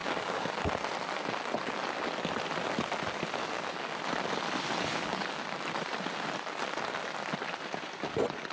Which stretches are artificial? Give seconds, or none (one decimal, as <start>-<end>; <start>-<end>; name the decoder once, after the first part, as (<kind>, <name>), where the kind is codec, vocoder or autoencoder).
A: 0.0-0.6 (codec, DAC); 3.4-4.0; 4.9-5.4